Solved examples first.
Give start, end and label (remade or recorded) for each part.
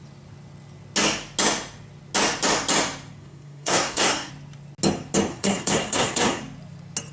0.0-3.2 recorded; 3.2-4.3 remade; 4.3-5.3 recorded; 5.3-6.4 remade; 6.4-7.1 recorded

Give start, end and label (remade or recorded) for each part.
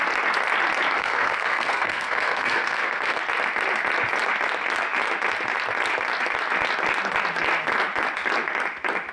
0.0-1.0 recorded; 1.0-3.2 remade; 3.2-9.1 recorded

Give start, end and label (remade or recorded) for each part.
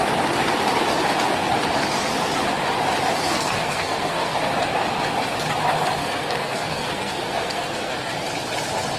0.0-3.3 recorded; 3.3-4.5 remade; 4.5-6.0 recorded; 6.0-7.9 remade; 7.9-9.0 recorded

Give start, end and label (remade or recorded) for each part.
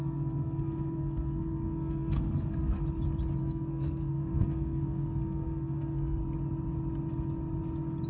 0.0-2.8 remade; 2.8-3.4 recorded; 3.4-6.2 remade; 6.2-8.1 recorded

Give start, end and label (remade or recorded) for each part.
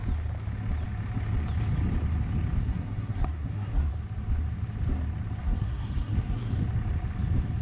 0.0-2.6 recorded; 2.6-3.9 remade; 3.9-5.4 recorded; 5.4-6.5 remade; 6.5-7.6 recorded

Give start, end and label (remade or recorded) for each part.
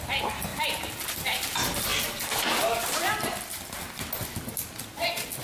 0.0-5.4 recorded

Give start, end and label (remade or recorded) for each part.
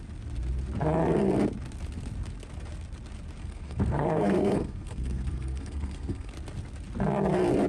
0.0-3.4 recorded; 3.4-6.3 remade; 6.3-7.7 recorded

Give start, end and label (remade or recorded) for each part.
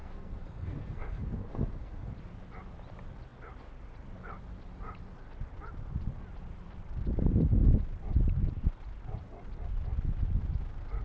0.0-2.1 remade; 2.1-11.0 recorded